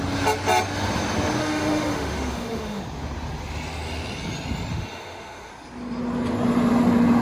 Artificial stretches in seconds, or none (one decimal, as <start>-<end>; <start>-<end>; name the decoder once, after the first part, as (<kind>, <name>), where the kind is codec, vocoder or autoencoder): 1.4-2.8 (autoencoder, DAC-VAE); 4.7-5.5